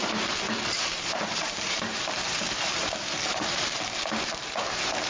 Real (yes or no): no